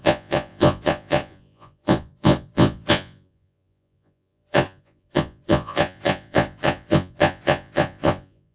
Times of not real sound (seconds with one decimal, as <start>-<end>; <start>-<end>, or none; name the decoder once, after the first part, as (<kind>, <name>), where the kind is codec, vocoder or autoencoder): 0.0-8.5 (vocoder, Vocos)